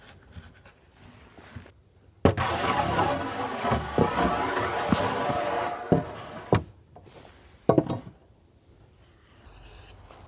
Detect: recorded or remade recorded